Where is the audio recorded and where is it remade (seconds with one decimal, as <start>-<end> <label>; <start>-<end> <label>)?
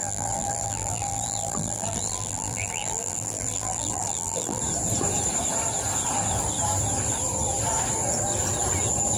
0.0-4.6 remade; 4.6-9.2 recorded